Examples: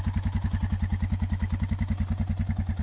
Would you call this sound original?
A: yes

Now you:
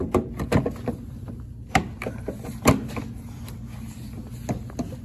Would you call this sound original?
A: yes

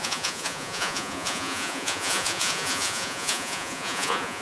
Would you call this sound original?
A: no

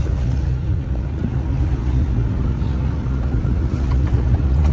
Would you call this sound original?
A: no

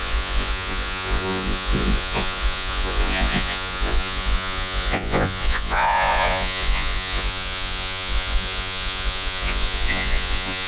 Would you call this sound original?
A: no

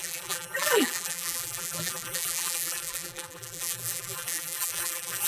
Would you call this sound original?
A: no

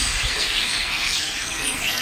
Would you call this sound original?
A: no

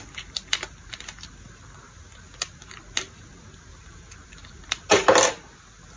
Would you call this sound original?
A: yes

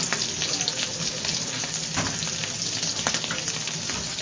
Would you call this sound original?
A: yes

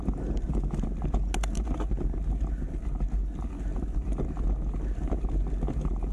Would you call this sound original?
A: yes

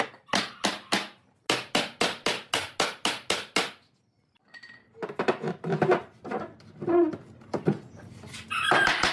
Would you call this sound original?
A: yes